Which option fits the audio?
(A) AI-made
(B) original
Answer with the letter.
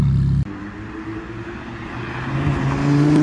B